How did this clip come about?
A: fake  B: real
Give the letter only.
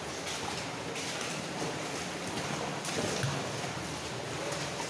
B